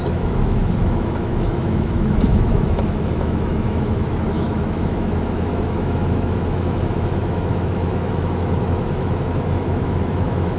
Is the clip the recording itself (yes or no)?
no